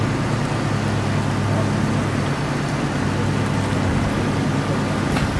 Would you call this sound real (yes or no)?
yes